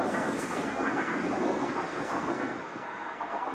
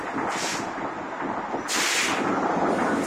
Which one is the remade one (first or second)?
first